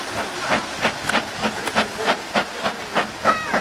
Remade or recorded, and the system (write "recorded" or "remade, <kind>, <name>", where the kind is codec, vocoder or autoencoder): recorded